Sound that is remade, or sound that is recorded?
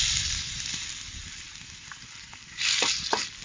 recorded